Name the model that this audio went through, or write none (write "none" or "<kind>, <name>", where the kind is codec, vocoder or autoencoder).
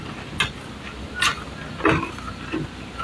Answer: none